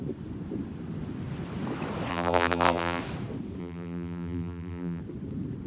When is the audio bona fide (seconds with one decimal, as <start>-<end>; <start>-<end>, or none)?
0.0-2.1; 3.0-3.6; 5.0-5.7